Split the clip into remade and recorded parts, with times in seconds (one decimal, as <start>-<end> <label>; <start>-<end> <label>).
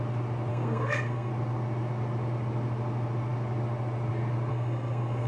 0.0-0.5 recorded; 0.5-1.3 remade; 1.3-4.5 recorded; 4.5-5.3 remade